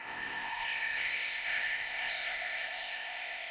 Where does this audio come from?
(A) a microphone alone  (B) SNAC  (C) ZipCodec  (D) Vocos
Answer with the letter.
C